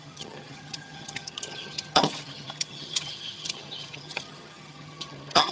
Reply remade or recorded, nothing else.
remade